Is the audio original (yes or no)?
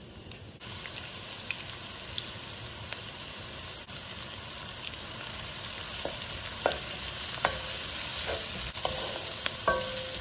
yes